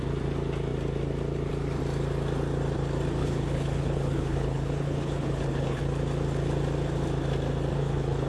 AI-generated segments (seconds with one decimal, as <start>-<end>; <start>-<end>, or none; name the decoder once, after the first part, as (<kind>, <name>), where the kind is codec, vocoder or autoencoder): 3.2-5.8 (codec, HILCodec); 7.7-8.3